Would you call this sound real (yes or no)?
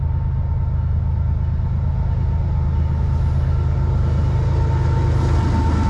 yes